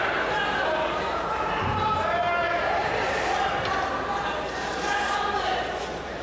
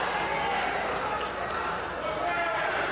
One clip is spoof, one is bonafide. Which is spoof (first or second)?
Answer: first